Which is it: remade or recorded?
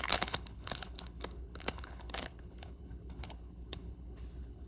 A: remade